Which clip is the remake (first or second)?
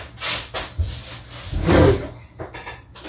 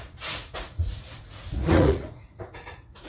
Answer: second